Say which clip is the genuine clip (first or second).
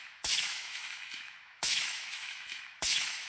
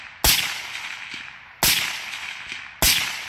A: second